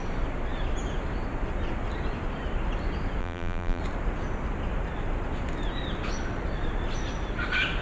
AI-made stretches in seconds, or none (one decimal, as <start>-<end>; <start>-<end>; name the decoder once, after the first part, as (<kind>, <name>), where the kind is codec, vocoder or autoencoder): 3.2-3.8 (vocoder, BigVGAN v2)